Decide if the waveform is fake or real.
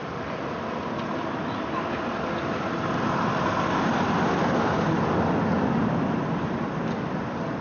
real